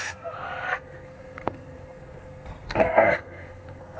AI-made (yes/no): yes